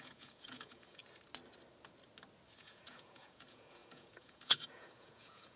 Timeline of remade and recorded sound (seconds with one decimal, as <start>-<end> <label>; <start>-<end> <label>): 0.0-1.0 remade; 1.0-2.6 recorded; 2.6-5.6 remade